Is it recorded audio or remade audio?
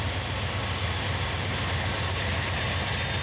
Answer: recorded